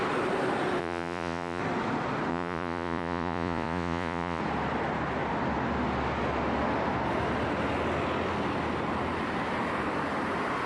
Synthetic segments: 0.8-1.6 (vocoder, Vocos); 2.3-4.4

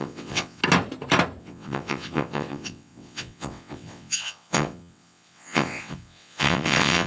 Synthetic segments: 0.0-0.6 (vocoder, WaveNeXt); 1.4-7.1

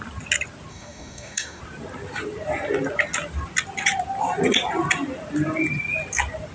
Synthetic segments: 0.7-1.6 (codec, DAC)

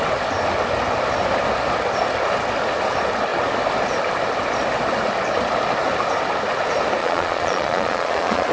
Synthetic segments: 7.0-8.5 (vocoder, Vocos)

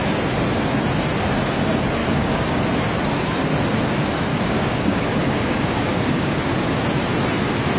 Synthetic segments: 2.0-2.6 (codec, DAC); 4.3-6.4